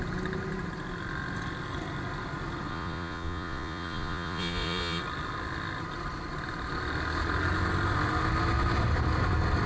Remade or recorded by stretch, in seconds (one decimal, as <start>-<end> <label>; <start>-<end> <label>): 0.0-2.7 recorded; 2.7-5.0 remade; 5.0-9.7 recorded